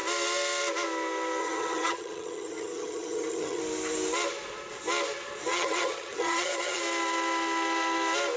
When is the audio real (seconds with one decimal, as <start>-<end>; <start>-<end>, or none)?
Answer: 0.0-1.4; 3.6-5.5; 6.8-8.4